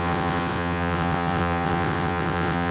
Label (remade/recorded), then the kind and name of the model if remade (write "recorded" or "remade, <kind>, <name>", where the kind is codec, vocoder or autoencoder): remade, vocoder, WaveNeXt